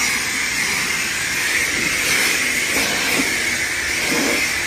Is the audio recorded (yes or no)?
yes